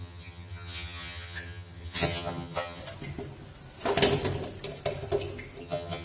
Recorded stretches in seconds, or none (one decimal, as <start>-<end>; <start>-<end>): 2.8-5.6